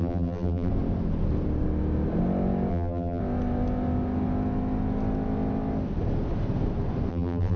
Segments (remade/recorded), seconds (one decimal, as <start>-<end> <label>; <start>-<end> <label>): 0.0-0.7 remade; 0.7-2.7 recorded; 2.7-3.2 remade; 3.2-7.1 recorded; 7.1-7.6 remade